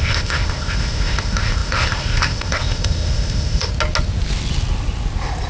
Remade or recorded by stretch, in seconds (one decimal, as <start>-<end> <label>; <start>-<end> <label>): 0.0-3.7 remade; 3.7-5.5 recorded

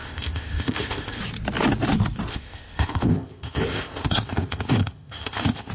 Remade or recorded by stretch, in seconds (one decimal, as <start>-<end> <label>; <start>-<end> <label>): 0.0-1.2 remade; 1.2-2.3 recorded; 2.3-5.7 remade

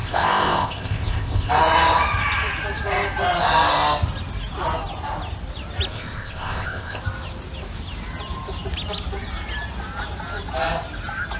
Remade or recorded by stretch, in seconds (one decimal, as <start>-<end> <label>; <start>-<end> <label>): 0.0-1.5 remade; 1.5-5.9 recorded; 5.9-7.0 remade; 7.0-11.4 recorded

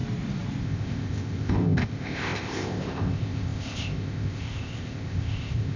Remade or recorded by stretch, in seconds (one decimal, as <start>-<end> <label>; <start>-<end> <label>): 0.0-0.6 recorded; 0.6-5.8 remade